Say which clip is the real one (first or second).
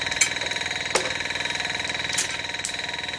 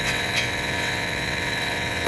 first